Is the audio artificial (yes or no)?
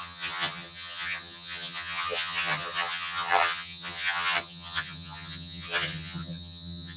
yes